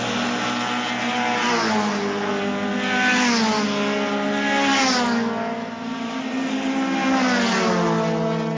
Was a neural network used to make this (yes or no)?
no